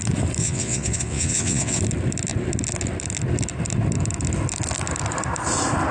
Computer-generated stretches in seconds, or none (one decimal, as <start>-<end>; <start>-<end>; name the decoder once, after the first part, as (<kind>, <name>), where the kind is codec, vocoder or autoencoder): 0.4-1.8 (vocoder, WaveNeXt)